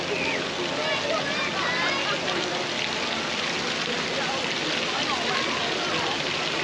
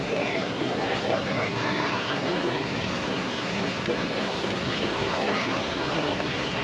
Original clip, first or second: first